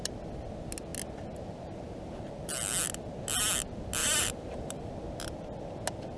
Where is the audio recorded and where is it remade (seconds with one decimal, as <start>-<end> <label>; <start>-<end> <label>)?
0.0-4.0 recorded; 4.0-4.9 remade; 4.9-6.2 recorded